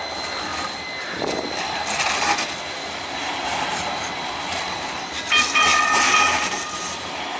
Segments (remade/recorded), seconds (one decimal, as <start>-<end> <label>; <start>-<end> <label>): 0.0-7.4 recorded